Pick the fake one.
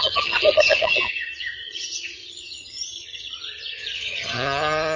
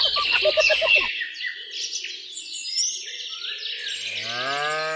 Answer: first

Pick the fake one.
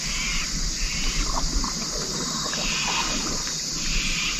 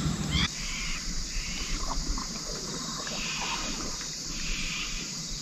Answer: second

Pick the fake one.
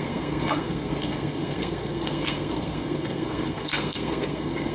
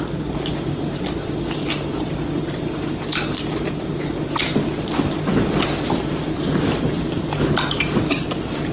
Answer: first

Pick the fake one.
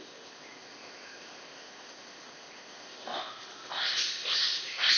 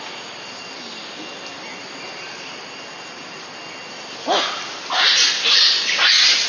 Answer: first